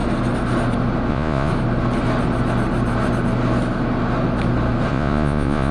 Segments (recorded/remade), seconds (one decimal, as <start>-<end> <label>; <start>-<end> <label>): 0.0-1.1 recorded; 1.1-1.5 remade; 1.5-4.9 recorded; 4.9-5.7 remade